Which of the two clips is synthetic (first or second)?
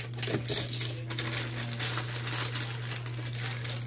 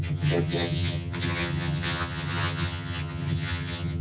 second